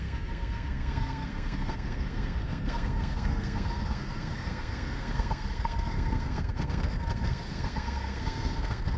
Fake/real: fake